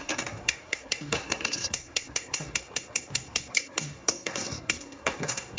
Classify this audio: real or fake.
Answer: fake